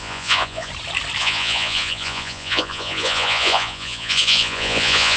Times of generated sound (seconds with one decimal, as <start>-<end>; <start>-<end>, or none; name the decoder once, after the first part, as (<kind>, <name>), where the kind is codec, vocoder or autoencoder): 0.0-0.7 (vocoder, Vocos); 1.2-5.2